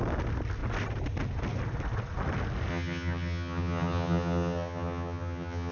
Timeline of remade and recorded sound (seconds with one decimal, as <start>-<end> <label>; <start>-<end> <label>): 0.0-2.7 recorded; 2.7-5.7 remade